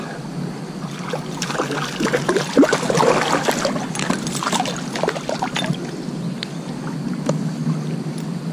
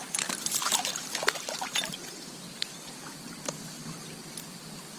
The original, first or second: first